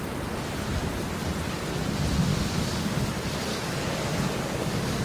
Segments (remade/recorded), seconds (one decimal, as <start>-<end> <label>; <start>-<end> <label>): 0.0-2.3 recorded; 2.3-3.1 remade; 3.1-3.5 recorded; 3.5-5.0 remade